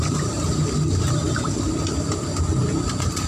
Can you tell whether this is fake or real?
real